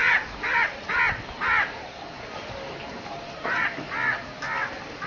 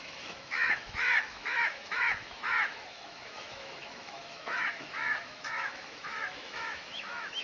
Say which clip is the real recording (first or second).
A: first